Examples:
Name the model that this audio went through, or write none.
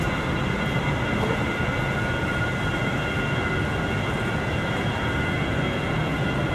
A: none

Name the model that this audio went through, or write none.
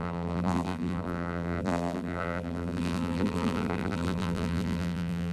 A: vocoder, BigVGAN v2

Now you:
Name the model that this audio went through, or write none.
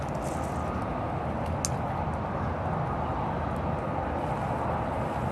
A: none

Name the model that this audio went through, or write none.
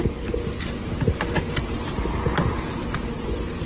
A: none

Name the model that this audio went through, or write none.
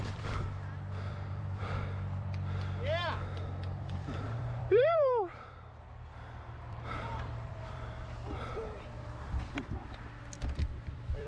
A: vocoder, BigVGAN v2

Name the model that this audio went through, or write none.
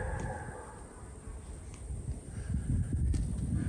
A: none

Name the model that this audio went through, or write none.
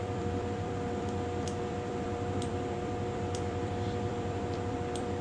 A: vocoder, BigVGAN v2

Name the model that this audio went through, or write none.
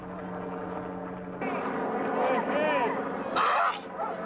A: none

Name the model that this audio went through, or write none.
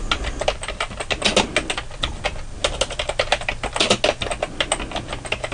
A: none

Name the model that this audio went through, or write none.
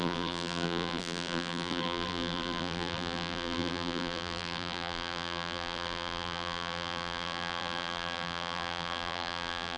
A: vocoder, BigVGAN v2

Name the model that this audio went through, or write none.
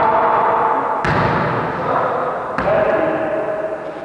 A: none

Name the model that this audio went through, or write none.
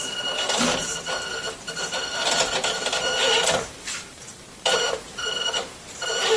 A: vocoder, BigVGAN v2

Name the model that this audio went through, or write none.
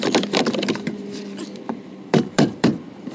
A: vocoder, BigVGAN v2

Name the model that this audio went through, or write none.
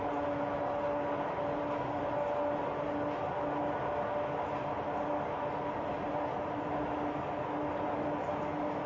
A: none